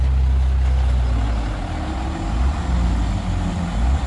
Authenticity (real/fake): real